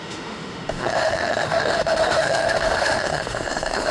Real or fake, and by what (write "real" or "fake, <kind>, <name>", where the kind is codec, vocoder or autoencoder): fake, autoencoder, DAC-VAE